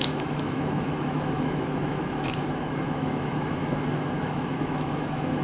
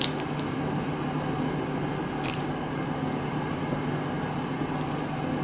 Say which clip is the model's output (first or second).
first